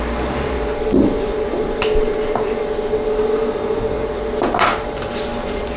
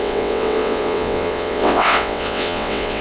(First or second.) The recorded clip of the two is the first